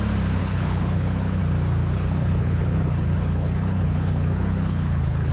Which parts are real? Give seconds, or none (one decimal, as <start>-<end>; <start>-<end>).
0.0-0.4; 1.4-1.8